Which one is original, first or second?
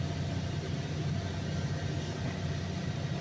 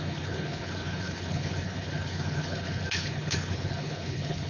first